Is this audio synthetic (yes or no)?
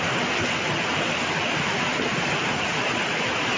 no